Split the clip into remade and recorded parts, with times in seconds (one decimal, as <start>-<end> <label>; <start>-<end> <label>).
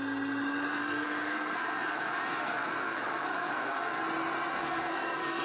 0.0-0.8 recorded; 0.8-4.0 remade; 4.0-4.5 recorded; 4.5-5.4 remade